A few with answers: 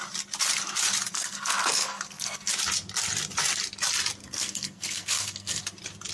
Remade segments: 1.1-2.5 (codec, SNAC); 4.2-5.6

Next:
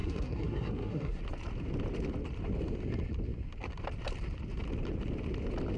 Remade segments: 0.0-1.2 (codec, SNAC)

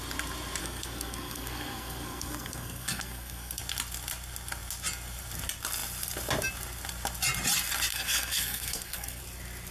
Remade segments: 0.6-3.6 (codec, SNAC); 7.9-9.2

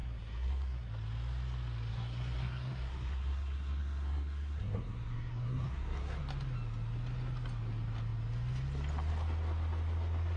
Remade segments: 0.0-0.9 (codec, SNAC); 1.9-6.2

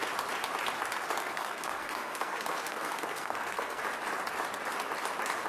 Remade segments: 1.2-3.8 (codec, SNAC)

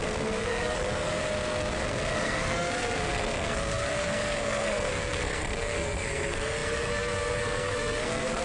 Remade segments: 0.0-8.4 (codec, SNAC)

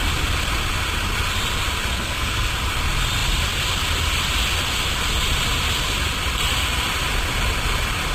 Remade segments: 1.9-2.5 (codec, SNAC)

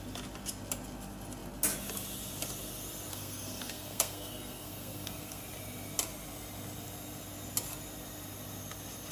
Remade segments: 3.1-5.4 (codec, SNAC)